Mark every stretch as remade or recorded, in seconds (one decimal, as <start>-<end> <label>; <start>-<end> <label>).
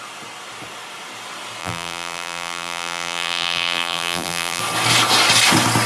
0.0-1.6 recorded; 1.6-4.6 remade; 4.6-5.9 recorded